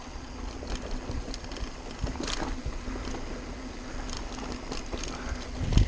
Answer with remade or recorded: recorded